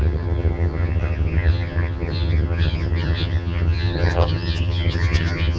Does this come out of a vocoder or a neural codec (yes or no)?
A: yes